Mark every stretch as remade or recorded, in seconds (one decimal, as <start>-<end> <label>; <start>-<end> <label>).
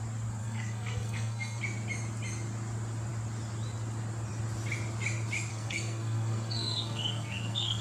0.0-0.4 recorded; 0.4-1.6 remade; 1.6-5.5 recorded; 5.5-7.8 remade